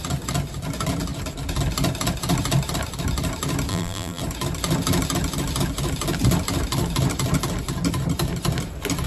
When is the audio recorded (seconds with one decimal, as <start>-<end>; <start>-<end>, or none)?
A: 0.0-3.7; 4.2-9.1